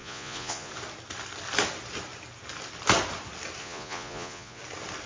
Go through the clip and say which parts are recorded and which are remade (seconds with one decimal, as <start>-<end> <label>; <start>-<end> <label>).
0.0-0.7 remade; 0.7-3.6 recorded; 3.6-4.6 remade; 4.6-5.1 recorded